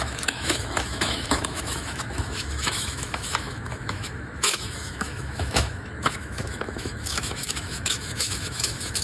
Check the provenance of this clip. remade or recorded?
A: remade